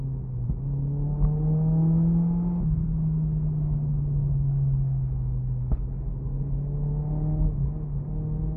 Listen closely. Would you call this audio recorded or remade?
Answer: recorded